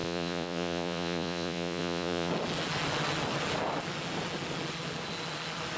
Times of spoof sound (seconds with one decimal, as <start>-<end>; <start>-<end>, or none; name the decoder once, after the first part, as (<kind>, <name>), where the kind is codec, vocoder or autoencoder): 0.0-2.3 (vocoder, Vocos)